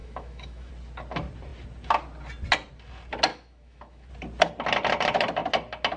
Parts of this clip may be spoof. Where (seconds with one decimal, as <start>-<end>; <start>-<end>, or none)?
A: 0.0-0.7; 3.3-4.1